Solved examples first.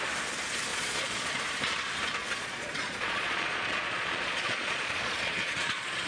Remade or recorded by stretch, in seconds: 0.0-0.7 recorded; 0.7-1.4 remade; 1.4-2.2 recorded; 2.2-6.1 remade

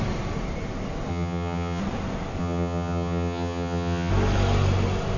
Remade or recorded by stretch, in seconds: 0.0-1.1 recorded; 1.1-1.8 remade; 1.8-2.4 recorded; 2.4-4.1 remade; 4.1-5.2 recorded